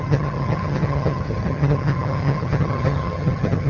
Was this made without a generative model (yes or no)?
no